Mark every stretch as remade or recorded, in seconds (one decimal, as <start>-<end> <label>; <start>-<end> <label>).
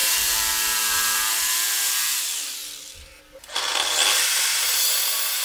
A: 0.0-3.2 remade; 3.2-5.4 recorded